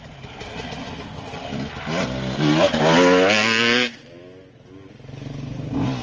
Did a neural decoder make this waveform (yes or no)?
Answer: no